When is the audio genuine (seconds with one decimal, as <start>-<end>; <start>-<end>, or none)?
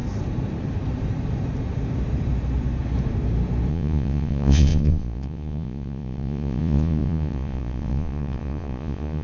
0.0-3.7